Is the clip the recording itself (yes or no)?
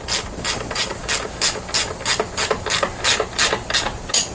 yes